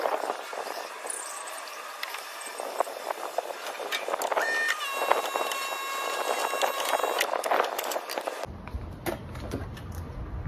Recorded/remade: recorded